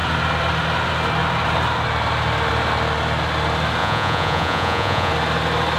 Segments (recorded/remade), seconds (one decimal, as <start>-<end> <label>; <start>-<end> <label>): 0.0-3.8 recorded; 3.8-5.1 remade; 5.1-5.8 recorded